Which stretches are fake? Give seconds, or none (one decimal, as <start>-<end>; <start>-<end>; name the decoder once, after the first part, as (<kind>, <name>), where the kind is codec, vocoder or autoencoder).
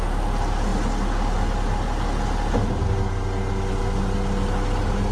none